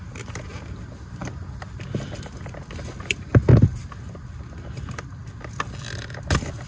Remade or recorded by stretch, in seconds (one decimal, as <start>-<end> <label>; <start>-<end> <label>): 0.0-6.7 recorded